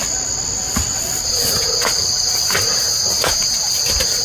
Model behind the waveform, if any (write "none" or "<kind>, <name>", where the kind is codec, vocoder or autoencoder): none